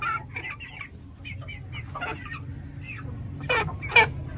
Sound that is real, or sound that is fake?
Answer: real